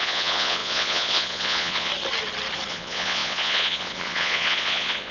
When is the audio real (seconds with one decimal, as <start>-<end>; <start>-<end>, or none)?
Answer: 1.9-2.7